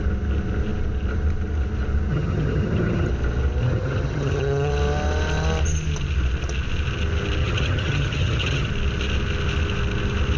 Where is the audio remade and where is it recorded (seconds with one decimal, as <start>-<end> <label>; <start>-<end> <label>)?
0.0-2.1 recorded; 2.1-3.1 remade; 3.1-3.6 recorded; 3.6-4.7 remade; 4.7-7.4 recorded; 7.4-8.7 remade; 8.7-10.4 recorded

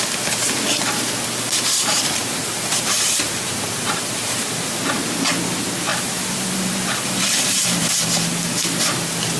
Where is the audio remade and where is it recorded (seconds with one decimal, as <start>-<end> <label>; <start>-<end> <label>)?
0.0-2.4 recorded; 2.4-4.8 remade; 4.8-5.9 recorded; 5.9-8.1 remade; 8.1-9.4 recorded

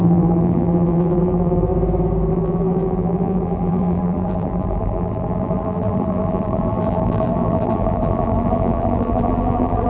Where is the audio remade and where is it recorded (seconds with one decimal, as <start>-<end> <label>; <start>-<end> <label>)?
0.0-1.7 remade; 1.7-2.3 recorded; 2.3-9.9 remade